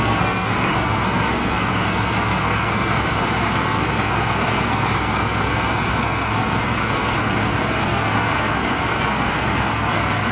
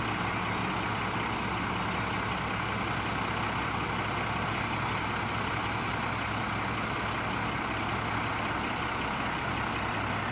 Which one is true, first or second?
second